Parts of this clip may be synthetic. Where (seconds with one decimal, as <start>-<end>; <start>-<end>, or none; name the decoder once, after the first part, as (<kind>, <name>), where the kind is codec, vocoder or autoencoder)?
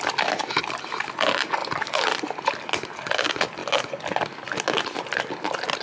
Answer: none